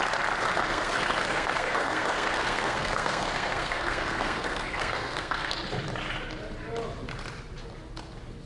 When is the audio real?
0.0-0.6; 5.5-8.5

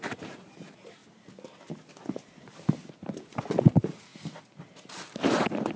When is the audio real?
1.0-3.6; 4.1-5.8

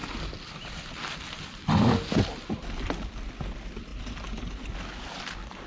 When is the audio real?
0.0-5.7

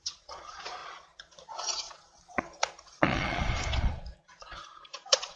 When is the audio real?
none

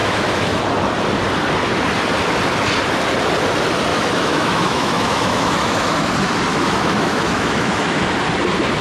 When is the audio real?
0.6-3.9; 6.1-6.5; 8.0-8.8

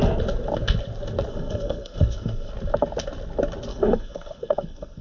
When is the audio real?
0.0-1.3; 2.5-3.7